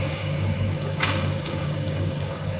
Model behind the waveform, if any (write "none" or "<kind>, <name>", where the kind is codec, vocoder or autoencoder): codec, DAC